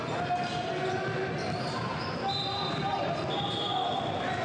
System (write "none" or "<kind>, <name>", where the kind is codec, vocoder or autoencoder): none